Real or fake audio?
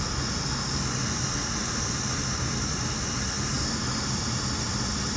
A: real